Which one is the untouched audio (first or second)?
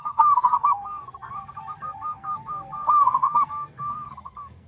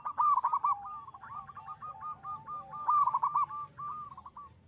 second